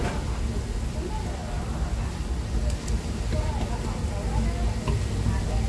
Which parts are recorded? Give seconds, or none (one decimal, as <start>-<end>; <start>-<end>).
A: 0.0-5.7